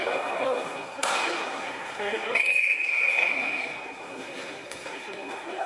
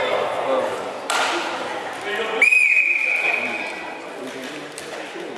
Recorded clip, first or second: second